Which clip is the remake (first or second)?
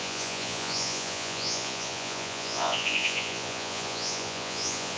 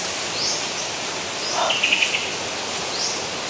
first